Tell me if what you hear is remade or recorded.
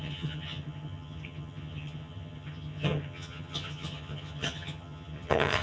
remade